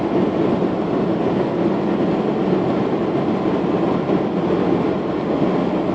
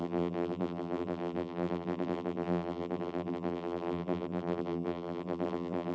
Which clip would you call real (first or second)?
first